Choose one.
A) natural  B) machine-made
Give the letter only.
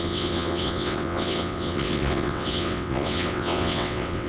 B